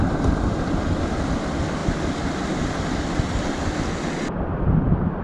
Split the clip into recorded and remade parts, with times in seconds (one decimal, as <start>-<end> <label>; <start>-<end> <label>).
0.0-5.2 recorded